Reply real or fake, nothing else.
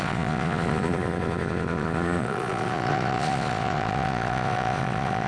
fake